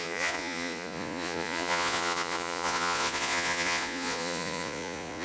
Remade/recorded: remade